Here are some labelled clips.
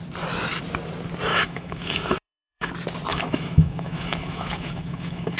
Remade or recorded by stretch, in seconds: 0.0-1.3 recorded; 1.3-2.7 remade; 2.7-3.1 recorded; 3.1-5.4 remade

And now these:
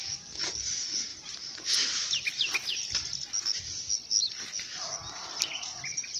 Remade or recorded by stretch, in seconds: 0.0-6.2 recorded

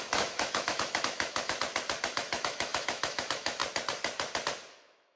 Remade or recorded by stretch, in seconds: 0.0-1.6 remade; 1.6-2.1 recorded; 2.1-3.6 remade; 3.6-4.7 recorded; 4.7-5.2 remade

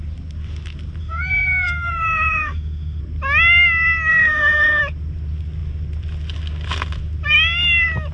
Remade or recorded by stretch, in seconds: 0.0-1.0 recorded; 1.0-3.0 remade; 3.0-4.1 recorded; 4.1-4.8 remade; 4.8-8.1 recorded

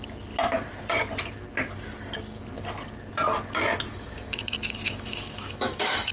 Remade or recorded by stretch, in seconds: 0.0-3.9 recorded; 3.9-6.1 remade

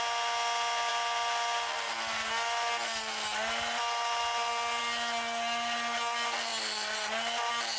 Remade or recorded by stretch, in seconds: 0.0-7.8 recorded